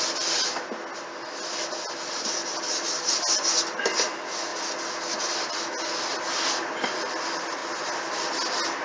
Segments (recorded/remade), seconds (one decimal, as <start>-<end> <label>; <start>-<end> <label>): 0.0-8.8 recorded